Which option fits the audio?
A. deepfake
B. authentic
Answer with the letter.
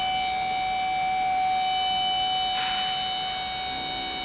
B